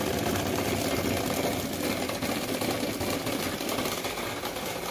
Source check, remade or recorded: recorded